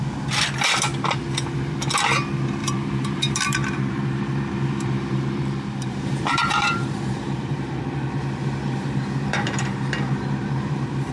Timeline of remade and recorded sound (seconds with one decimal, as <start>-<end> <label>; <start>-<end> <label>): 0.0-2.6 recorded; 2.6-7.8 remade; 7.8-8.4 recorded; 8.4-11.1 remade